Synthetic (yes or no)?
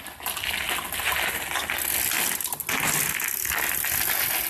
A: no